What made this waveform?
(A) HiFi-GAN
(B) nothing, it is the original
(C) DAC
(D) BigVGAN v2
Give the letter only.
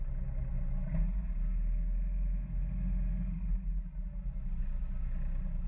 B